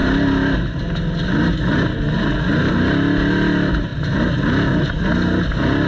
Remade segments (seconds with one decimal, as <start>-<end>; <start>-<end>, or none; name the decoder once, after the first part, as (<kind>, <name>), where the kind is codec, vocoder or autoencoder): none